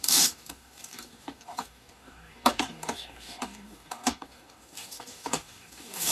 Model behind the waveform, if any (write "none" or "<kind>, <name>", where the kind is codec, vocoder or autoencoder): codec, DAC